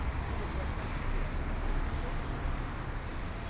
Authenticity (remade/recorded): recorded